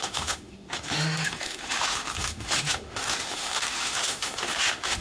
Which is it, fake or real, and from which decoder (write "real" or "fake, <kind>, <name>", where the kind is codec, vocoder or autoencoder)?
fake, autoencoder, DAC-VAE